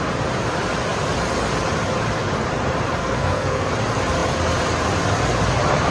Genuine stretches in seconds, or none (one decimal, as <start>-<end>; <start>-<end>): 0.0-3.0; 3.7-5.9